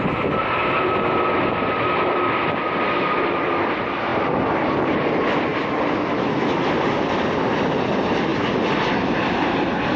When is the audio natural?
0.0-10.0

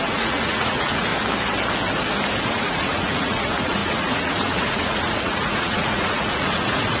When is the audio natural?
1.1-2.5

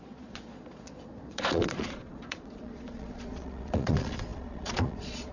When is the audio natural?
none

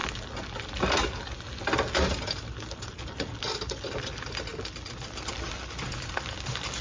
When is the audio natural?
0.0-6.8

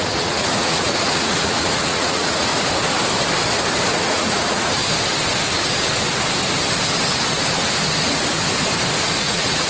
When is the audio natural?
2.5-4.0; 4.8-9.2